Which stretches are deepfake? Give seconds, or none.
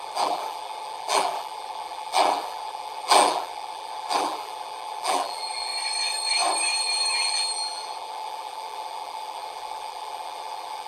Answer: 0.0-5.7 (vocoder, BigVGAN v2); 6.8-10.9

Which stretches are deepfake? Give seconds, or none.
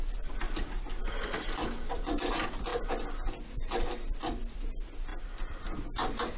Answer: 1.0-2.3 (vocoder, BigVGAN v2); 2.7-4.4; 5.1-5.8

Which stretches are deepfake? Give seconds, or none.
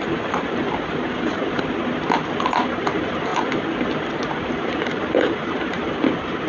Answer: 0.0-1.4 (vocoder, BigVGAN v2); 2.6-3.3; 4.1-6.5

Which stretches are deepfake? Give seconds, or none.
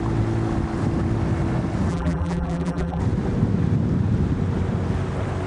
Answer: 1.9-3.0 (vocoder, BigVGAN v2)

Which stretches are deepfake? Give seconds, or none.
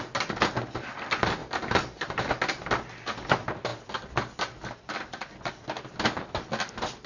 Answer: 1.4-2.2 (vocoder, BigVGAN v2)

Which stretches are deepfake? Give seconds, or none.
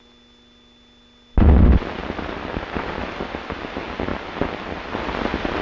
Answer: 2.0-2.6 (vocoder, BigVGAN v2); 4.1-5.1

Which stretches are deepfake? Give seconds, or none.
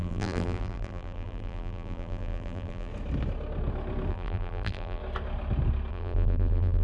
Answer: 0.0-2.9 (vocoder, BigVGAN v2); 4.1-5.0; 5.9-6.8